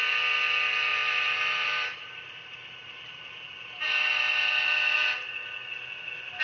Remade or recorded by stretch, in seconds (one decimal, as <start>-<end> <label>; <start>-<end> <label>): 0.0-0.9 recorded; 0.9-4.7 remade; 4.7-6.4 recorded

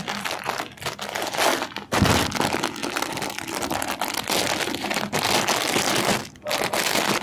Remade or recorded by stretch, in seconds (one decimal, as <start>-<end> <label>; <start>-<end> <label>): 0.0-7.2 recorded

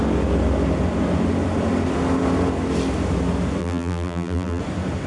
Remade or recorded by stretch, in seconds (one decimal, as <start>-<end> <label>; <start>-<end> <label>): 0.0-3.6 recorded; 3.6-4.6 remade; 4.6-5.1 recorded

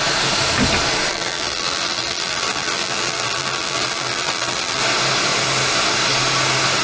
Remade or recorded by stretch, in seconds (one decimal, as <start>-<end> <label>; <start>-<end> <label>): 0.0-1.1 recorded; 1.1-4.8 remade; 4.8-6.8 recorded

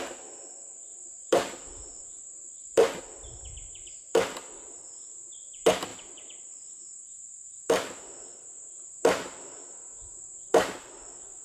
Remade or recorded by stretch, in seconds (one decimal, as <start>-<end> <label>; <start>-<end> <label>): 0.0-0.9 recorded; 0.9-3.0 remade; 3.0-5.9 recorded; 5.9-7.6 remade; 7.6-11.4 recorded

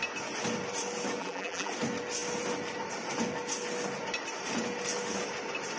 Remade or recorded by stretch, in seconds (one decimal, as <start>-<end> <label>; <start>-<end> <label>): 0.0-1.2 recorded; 1.2-1.7 remade; 1.7-5.8 recorded

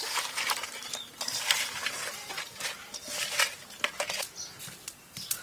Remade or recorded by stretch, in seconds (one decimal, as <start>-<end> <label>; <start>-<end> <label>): 0.0-5.4 remade

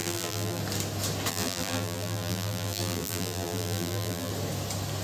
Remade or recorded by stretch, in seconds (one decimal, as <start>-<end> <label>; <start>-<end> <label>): 0.0-0.6 remade; 0.6-1.3 recorded; 1.3-4.3 remade; 4.3-5.0 recorded